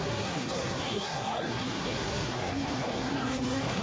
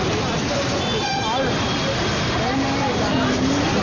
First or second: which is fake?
first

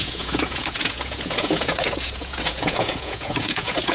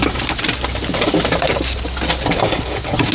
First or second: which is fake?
first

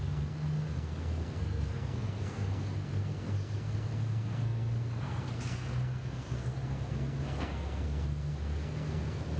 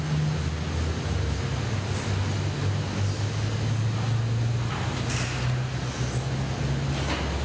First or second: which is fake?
first